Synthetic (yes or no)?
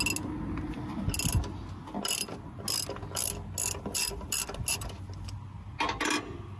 no